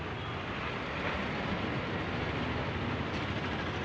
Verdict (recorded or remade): recorded